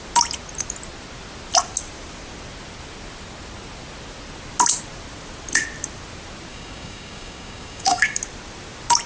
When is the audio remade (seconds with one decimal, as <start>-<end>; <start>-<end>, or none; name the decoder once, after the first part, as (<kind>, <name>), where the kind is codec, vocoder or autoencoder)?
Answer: 6.5-8.2 (codec, DAC)